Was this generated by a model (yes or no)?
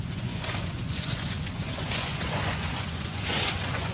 yes